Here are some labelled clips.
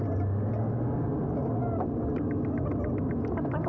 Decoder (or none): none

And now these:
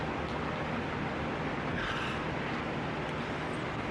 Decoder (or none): none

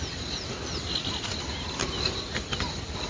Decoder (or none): none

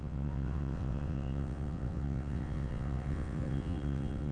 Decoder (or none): vocoder, WaveNeXt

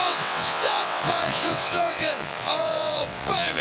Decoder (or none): vocoder, WaveNeXt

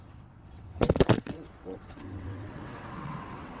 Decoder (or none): vocoder, WaveNeXt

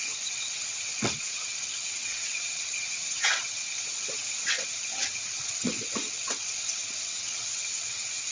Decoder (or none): vocoder, WaveNeXt